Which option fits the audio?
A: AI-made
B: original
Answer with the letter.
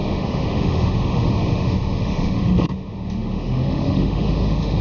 A